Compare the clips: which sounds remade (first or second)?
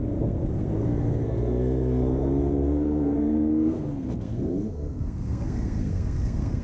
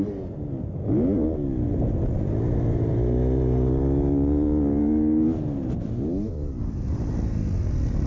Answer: first